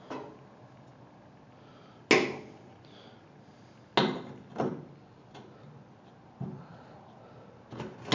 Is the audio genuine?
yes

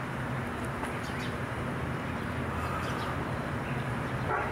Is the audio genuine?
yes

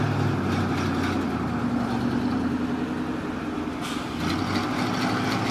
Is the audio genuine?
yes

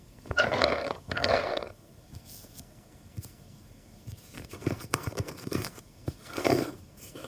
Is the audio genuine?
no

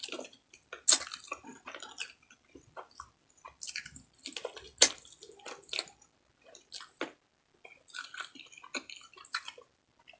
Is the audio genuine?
yes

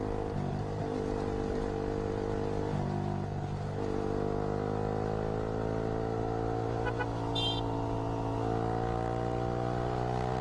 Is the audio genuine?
yes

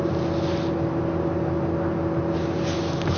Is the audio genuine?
yes